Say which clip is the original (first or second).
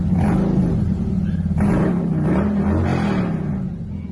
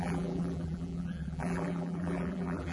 first